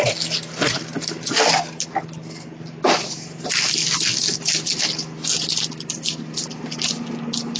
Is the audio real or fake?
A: real